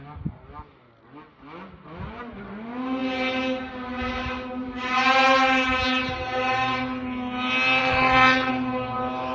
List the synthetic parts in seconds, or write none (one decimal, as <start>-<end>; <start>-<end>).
7.8-8.5